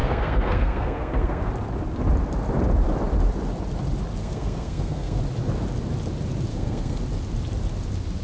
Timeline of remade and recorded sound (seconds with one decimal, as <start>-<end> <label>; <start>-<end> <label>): 0.0-1.5 remade; 1.5-4.2 recorded; 4.2-5.2 remade; 5.2-6.5 recorded; 6.5-7.0 remade; 7.0-8.2 recorded